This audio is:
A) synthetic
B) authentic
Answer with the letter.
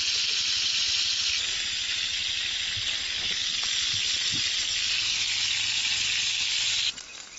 B